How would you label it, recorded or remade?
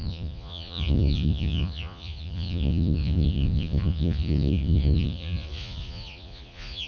remade